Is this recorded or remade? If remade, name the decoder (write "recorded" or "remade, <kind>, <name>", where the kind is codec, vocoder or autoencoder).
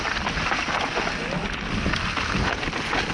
recorded